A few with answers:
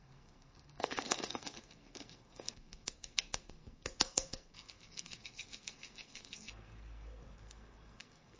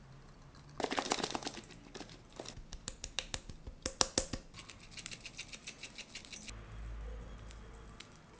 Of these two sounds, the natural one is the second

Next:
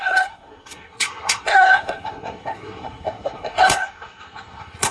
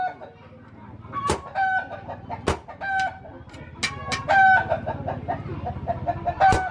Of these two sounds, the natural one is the second